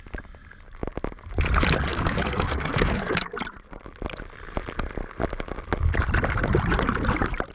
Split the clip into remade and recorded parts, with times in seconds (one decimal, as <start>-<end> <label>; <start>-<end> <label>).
0.0-1.9 recorded; 1.9-3.3 remade; 3.3-7.5 recorded